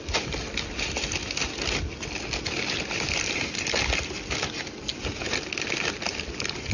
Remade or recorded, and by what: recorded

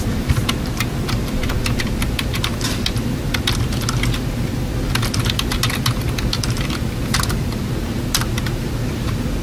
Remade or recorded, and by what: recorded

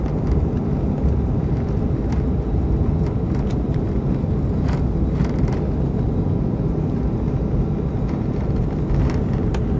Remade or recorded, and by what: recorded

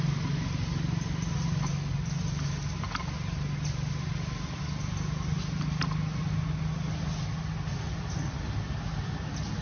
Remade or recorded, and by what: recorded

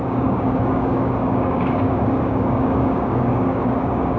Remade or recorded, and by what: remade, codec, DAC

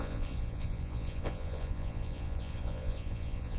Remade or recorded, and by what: remade, vocoder, Vocos